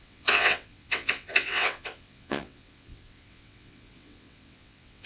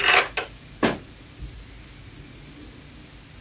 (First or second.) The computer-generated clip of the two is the first